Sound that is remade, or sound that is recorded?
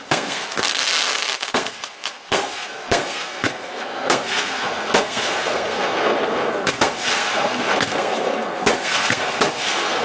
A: remade